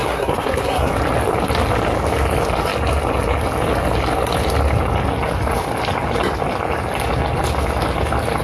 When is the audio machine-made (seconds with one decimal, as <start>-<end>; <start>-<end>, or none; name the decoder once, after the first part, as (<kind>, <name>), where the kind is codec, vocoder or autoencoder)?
0.0-0.9 (codec, SNAC)